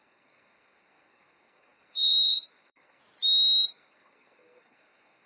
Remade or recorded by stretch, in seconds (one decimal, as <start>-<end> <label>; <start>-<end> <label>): 0.0-3.0 remade; 3.0-3.7 recorded; 3.7-5.3 remade